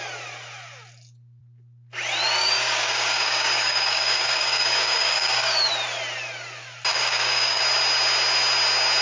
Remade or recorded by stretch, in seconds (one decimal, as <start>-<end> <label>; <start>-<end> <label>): 0.0-2.4 recorded; 2.4-5.7 remade; 5.7-6.9 recorded; 6.9-7.6 remade; 7.6-9.0 recorded